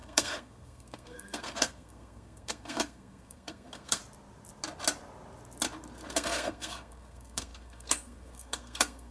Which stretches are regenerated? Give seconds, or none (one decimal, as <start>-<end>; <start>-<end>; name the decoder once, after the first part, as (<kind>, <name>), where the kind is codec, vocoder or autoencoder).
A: 0.0-4.0 (codec, SNAC); 6.1-9.1